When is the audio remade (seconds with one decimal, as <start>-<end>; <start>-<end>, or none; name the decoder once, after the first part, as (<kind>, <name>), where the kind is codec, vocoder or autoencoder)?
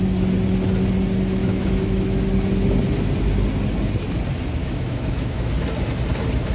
1.4-2.2 (autoencoder, DAC-VAE); 4.6-5.5